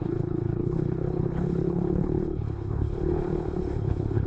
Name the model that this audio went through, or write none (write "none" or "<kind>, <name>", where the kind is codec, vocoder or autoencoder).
codec, HILCodec